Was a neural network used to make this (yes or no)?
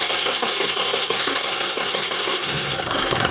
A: yes